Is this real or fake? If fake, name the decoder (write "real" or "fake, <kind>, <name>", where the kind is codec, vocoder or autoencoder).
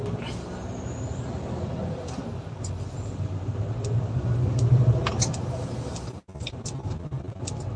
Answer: real